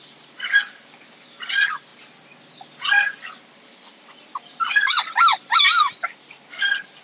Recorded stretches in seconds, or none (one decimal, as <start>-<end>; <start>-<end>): 1.9-3.4